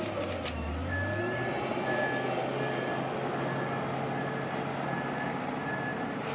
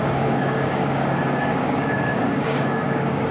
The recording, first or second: first